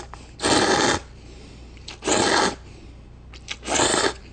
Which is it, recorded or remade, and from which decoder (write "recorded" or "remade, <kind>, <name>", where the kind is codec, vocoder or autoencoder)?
recorded